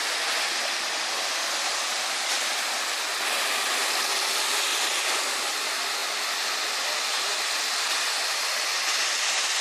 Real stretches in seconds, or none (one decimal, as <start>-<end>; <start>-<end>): 0.0-6.0; 6.5-9.6